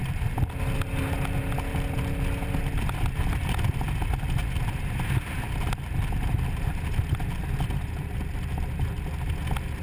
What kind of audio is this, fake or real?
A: real